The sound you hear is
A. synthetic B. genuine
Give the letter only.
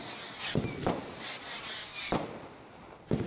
B